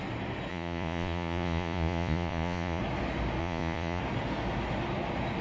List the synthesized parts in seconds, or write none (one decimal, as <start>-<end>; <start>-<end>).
0.5-2.8; 3.4-4.0